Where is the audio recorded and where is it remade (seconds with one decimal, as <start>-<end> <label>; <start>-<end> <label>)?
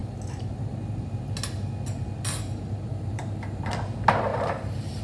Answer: 0.0-2.9 recorded; 2.9-3.7 remade; 3.7-4.3 recorded; 4.3-5.0 remade